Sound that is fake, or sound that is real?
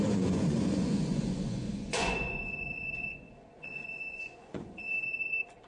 fake